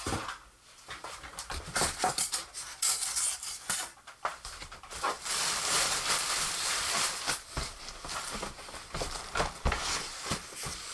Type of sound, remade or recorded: remade